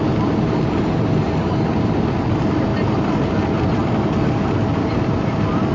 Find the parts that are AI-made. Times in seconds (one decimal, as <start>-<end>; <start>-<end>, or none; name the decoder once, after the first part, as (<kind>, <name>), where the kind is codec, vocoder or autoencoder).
none